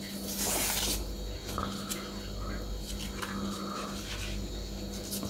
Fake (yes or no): no